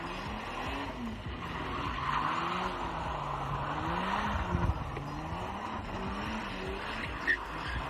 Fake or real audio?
real